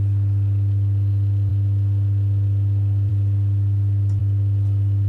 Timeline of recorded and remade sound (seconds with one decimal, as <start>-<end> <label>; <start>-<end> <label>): 0.0-5.1 recorded